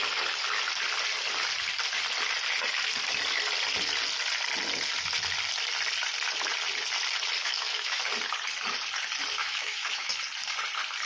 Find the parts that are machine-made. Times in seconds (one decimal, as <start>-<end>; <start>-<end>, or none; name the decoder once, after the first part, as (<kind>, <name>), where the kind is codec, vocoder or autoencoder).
7.4-8.0 (autoencoder, DAC-VAE); 9.4-10.1